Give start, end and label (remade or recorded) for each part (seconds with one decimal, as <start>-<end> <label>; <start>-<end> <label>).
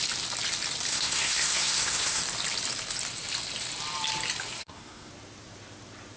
0.0-0.9 recorded; 0.9-2.2 remade; 2.2-4.6 recorded; 4.6-5.1 remade; 5.1-6.2 recorded